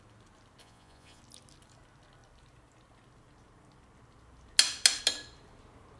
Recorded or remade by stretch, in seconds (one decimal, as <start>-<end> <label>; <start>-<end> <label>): 0.0-0.6 recorded; 0.6-1.2 remade; 1.2-6.0 recorded